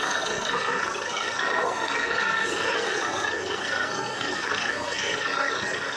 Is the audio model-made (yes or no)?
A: yes